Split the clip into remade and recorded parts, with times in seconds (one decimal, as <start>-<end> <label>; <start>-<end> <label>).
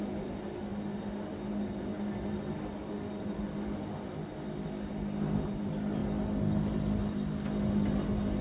0.0-8.4 recorded